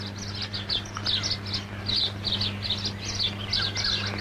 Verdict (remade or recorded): recorded